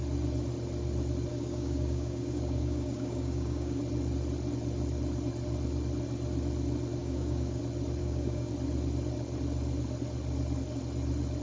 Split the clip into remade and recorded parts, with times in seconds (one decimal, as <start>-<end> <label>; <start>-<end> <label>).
0.0-1.3 recorded; 1.3-3.8 remade; 3.8-7.0 recorded; 7.0-7.6 remade; 7.6-8.0 recorded; 8.0-8.5 remade; 8.5-11.4 recorded